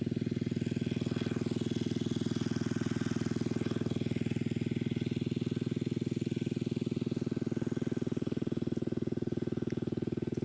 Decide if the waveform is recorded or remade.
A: recorded